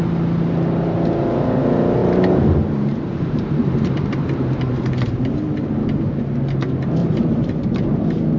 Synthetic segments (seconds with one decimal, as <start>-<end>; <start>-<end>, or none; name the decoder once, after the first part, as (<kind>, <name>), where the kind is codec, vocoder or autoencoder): 2.0-6.2 (vocoder, BigVGAN v2); 7.0-7.7